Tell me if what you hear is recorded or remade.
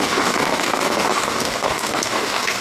remade